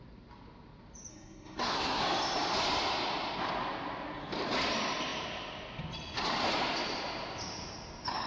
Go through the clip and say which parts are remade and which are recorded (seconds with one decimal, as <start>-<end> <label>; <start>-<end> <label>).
0.0-1.1 recorded; 1.1-2.0 remade; 2.0-8.3 recorded